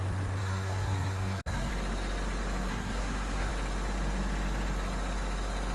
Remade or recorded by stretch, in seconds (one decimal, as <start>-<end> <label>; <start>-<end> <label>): 0.0-0.4 recorded; 0.4-1.7 remade; 1.7-2.7 recorded; 2.7-3.5 remade; 3.5-5.7 recorded